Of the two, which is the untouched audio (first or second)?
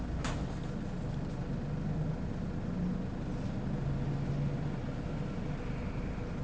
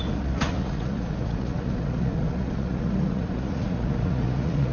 first